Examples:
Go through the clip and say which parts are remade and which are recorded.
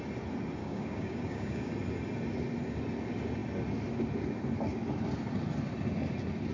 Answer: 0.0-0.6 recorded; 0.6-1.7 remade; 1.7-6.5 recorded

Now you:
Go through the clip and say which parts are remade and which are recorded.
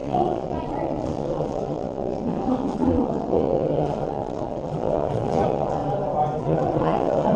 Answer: 0.0-5.8 remade; 5.8-6.4 recorded; 6.4-7.4 remade